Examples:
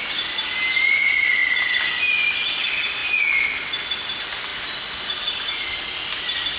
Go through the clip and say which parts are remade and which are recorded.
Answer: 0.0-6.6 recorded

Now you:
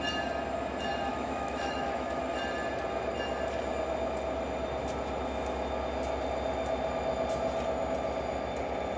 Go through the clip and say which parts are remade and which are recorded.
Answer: 0.0-1.1 recorded; 1.1-2.2 remade; 2.2-9.0 recorded